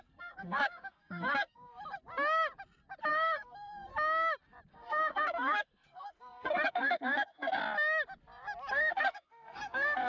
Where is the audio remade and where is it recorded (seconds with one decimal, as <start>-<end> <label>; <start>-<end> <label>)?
0.0-1.7 remade; 1.7-3.1 recorded; 3.1-3.9 remade; 3.9-4.7 recorded; 4.7-7.6 remade; 7.6-8.7 recorded; 8.7-10.1 remade

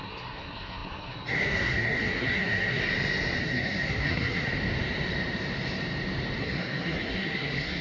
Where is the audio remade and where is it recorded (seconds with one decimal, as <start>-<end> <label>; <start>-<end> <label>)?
0.0-2.8 remade; 2.8-3.4 recorded; 3.4-4.5 remade; 4.5-6.4 recorded; 6.4-7.8 remade